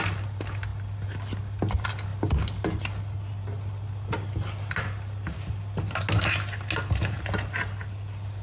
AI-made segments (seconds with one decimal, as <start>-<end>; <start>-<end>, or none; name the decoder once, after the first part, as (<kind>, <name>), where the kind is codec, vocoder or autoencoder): none

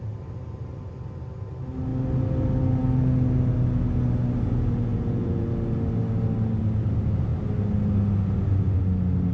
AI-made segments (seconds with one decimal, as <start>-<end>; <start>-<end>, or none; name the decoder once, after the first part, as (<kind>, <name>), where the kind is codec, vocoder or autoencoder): 4.9-5.5 (vocoder, Vocos)

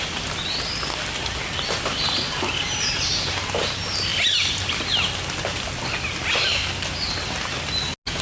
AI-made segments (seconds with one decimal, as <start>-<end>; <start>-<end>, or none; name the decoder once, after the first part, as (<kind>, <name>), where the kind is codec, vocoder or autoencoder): none

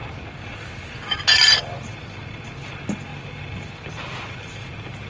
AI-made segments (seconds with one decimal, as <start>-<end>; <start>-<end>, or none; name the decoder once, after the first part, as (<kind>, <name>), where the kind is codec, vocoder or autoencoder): none

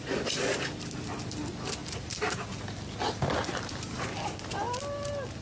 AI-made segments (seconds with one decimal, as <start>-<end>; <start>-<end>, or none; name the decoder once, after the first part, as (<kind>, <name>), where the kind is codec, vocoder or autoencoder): none

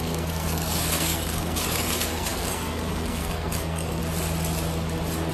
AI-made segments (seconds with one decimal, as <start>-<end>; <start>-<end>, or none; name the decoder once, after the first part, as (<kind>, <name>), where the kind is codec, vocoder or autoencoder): 0.0-4.0 (codec, SNAC)